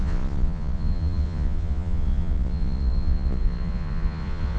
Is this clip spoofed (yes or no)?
yes